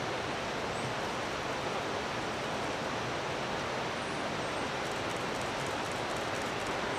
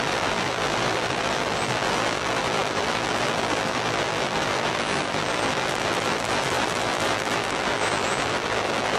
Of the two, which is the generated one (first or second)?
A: second